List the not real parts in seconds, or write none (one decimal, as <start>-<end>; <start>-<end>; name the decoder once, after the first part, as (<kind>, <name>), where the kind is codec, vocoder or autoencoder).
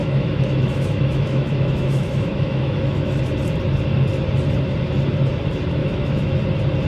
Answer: 0.0-3.2 (autoencoder, DAC-VAE); 5.8-6.4